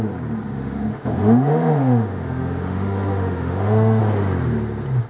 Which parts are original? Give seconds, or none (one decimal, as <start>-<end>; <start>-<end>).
0.0-0.9; 4.0-5.1